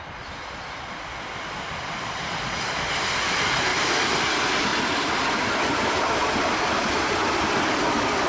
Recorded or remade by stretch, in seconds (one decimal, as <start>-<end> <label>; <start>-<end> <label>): 0.0-8.3 recorded

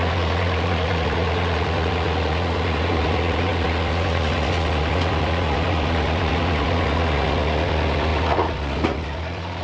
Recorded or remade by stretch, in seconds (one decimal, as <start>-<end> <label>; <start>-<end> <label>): 0.0-9.6 remade

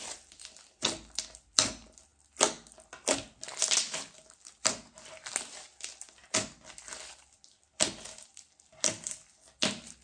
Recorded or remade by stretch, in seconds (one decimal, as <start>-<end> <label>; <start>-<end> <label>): 0.0-10.0 recorded